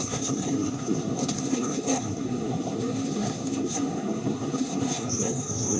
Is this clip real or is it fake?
fake